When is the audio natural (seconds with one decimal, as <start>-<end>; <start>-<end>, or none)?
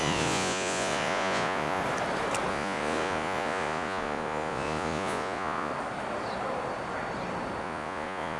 1.8-2.5; 5.7-7.6